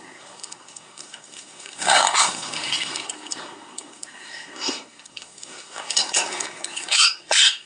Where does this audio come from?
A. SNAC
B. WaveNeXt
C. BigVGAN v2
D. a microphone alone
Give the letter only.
A